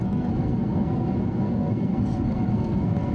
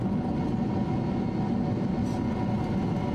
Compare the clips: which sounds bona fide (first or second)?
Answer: second